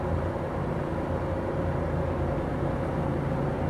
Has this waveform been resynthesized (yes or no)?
no